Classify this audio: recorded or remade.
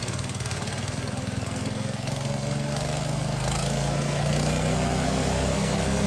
remade